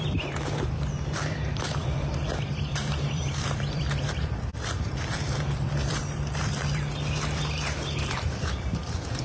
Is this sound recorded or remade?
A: remade